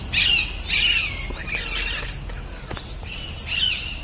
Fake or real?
real